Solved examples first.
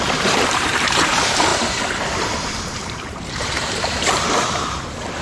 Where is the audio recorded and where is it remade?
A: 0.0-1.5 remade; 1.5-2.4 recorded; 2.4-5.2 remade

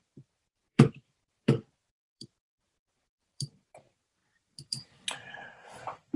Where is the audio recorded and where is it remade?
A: 0.0-6.2 remade

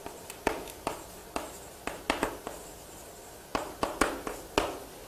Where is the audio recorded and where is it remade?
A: 0.0-1.2 remade; 1.2-2.3 recorded; 2.3-3.5 remade; 3.5-5.1 recorded